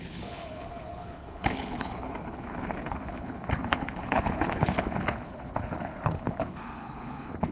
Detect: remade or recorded remade